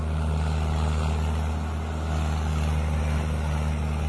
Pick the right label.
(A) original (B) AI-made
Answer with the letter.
A